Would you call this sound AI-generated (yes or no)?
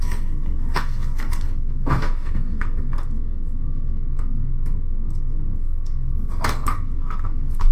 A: yes